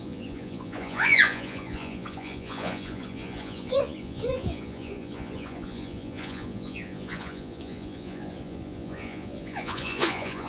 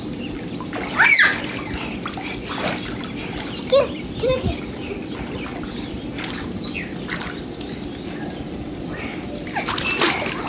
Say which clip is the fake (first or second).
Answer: first